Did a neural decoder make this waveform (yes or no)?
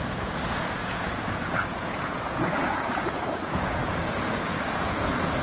yes